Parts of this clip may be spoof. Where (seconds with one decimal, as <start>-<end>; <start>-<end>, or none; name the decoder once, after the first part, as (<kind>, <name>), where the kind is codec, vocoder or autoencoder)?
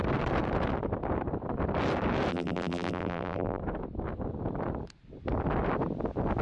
2.3-3.6 (vocoder, BigVGAN v2)